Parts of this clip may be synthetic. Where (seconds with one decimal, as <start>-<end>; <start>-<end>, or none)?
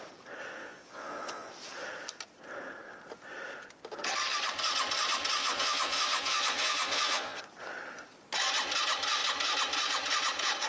0.6-1.5; 5.4-7.4